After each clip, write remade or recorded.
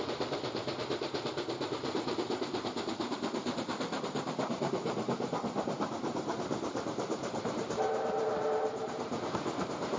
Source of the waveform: remade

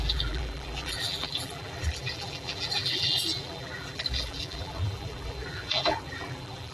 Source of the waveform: remade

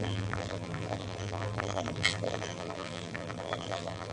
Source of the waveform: remade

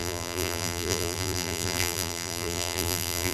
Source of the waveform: remade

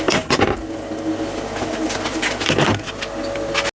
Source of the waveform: recorded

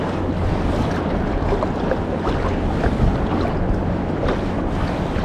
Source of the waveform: recorded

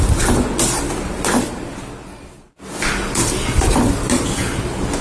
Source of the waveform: remade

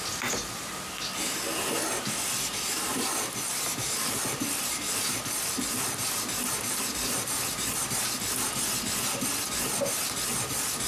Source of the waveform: recorded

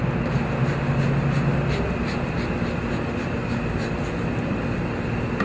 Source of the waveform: recorded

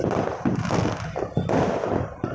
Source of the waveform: recorded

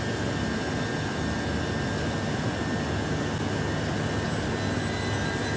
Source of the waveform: recorded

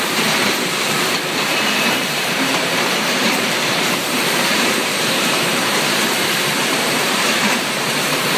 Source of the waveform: remade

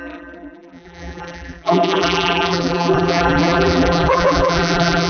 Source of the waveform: remade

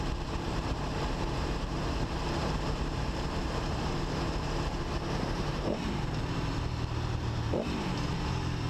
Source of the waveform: remade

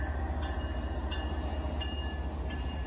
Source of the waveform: recorded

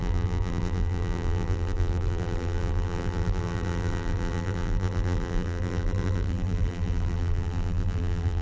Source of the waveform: remade